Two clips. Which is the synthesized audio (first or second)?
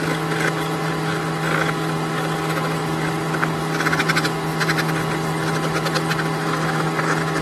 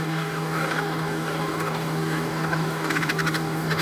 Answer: second